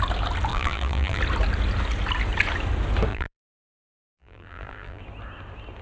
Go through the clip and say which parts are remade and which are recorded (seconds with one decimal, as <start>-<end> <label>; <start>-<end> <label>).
0.0-0.5 recorded; 0.5-1.2 remade; 1.2-3.1 recorded; 3.1-5.0 remade; 5.0-5.8 recorded